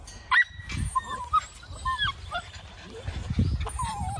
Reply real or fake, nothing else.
real